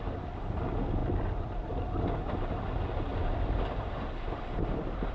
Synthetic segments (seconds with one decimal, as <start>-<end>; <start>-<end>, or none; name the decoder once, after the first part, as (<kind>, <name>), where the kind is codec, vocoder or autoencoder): none